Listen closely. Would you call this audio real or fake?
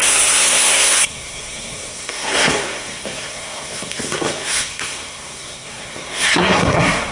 fake